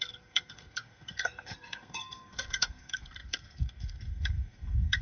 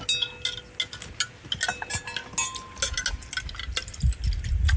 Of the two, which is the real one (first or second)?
second